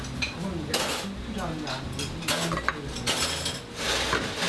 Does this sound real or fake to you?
real